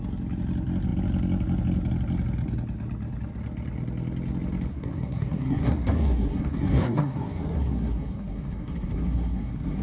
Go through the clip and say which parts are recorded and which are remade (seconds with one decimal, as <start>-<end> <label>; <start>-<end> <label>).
0.0-4.7 recorded; 4.7-9.8 remade